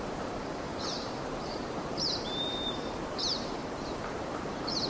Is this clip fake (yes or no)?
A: yes